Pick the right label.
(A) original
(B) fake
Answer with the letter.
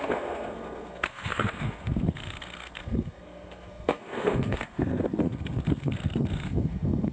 B